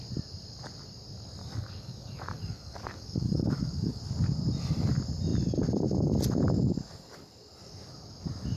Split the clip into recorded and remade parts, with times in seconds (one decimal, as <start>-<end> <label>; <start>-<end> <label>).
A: 0.0-1.4 recorded; 1.4-4.0 remade; 4.0-8.6 recorded